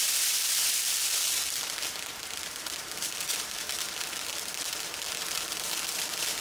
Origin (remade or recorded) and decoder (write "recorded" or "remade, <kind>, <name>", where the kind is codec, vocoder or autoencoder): remade, vocoder, BigVGAN v2